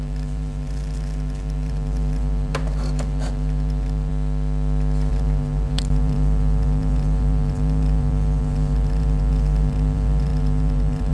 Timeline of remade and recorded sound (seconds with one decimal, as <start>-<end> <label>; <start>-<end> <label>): 0.0-4.1 remade; 4.1-5.1 recorded; 5.1-11.1 remade